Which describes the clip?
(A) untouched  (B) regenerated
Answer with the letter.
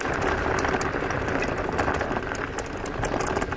A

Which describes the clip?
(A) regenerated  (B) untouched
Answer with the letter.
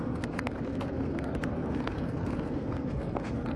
A